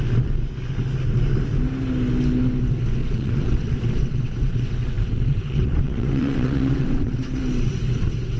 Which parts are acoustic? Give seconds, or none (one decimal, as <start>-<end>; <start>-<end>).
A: 0.0-3.0; 7.4-8.4